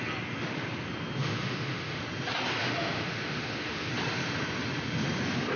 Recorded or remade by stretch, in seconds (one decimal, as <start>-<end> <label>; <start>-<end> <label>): 0.0-1.2 recorded; 1.2-2.0 remade; 2.0-2.6 recorded; 2.6-3.9 remade; 3.9-5.6 recorded